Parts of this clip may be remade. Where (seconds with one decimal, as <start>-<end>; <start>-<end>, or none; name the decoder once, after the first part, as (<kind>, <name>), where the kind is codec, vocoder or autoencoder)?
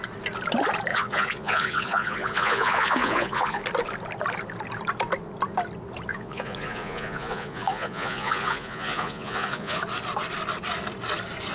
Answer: 0.9-3.6 (vocoder, Vocos); 6.1-9.8